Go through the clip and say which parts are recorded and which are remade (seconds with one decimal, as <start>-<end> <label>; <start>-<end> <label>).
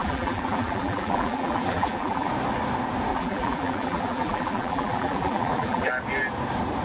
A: 0.0-2.3 remade; 2.3-3.1 recorded; 3.1-5.9 remade; 5.9-6.8 recorded